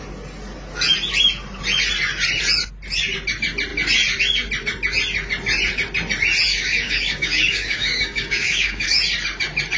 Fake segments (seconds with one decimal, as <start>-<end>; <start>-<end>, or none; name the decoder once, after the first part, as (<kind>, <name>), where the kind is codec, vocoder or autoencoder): 6.5-9.0 (codec, DAC)